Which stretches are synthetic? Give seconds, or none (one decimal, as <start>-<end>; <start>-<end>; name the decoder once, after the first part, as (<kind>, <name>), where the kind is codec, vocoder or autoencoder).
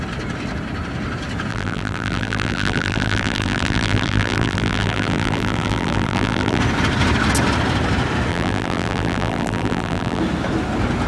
1.5-6.6 (vocoder, BigVGAN v2); 8.3-10.2